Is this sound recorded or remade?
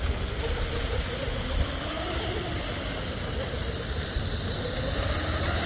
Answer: recorded